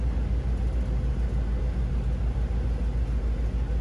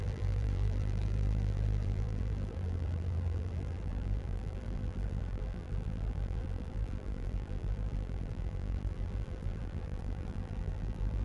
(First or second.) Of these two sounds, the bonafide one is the first